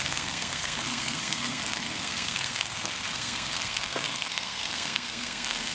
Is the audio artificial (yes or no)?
yes